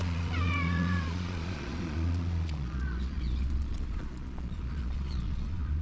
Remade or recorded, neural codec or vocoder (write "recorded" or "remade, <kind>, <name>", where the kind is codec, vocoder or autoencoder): remade, vocoder, Vocos